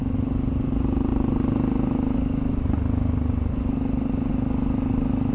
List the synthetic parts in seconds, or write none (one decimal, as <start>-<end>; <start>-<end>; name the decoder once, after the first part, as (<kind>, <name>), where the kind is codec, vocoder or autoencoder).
none